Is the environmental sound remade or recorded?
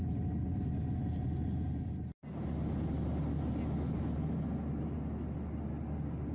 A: recorded